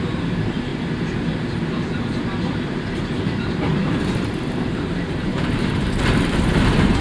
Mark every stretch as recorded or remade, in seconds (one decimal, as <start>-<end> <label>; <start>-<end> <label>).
0.0-0.7 remade; 0.7-3.2 recorded; 3.2-7.0 remade

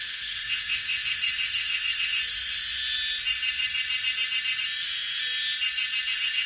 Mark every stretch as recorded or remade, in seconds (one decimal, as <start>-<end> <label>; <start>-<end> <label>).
0.0-2.2 remade; 2.2-6.1 recorded; 6.1-6.5 remade

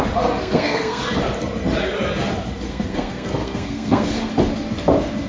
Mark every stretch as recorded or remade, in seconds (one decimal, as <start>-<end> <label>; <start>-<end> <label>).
0.0-0.4 recorded; 0.4-1.0 remade; 1.0-2.7 recorded; 2.7-4.3 remade; 4.3-5.3 recorded

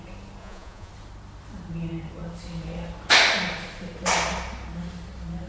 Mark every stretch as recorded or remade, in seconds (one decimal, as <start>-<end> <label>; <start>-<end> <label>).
0.0-0.4 recorded; 0.4-0.9 remade; 0.9-5.5 recorded

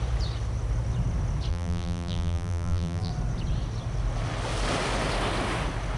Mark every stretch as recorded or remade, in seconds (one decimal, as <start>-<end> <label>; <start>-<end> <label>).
0.0-1.5 recorded; 1.5-3.1 remade; 3.1-6.0 recorded

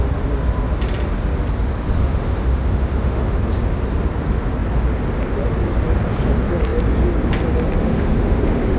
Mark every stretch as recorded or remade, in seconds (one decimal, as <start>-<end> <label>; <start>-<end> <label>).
0.0-2.0 recorded; 2.0-3.4 remade; 3.4-7.8 recorded; 7.8-8.4 remade; 8.4-8.8 recorded

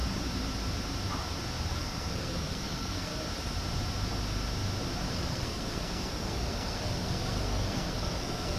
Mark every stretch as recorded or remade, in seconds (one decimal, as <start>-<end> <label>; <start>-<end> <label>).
0.0-1.7 recorded; 1.7-3.1 remade; 3.1-5.1 recorded; 5.1-8.6 remade

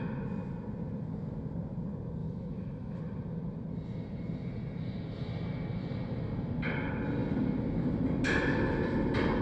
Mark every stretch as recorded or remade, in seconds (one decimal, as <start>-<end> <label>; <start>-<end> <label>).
0.0-2.2 recorded; 2.2-3.0 remade; 3.0-9.4 recorded